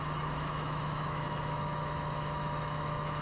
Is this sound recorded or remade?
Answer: remade